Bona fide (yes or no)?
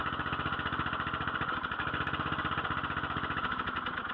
yes